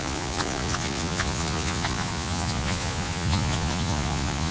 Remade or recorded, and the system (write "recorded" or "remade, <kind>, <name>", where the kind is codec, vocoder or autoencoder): remade, vocoder, Vocos